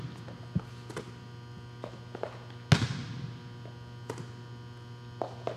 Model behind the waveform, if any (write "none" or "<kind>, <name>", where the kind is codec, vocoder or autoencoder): none